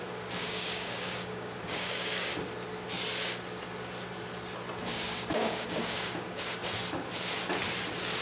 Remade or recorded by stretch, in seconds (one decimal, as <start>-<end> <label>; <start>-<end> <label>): 0.0-2.3 remade; 2.3-4.9 recorded; 4.9-6.6 remade; 6.6-8.2 recorded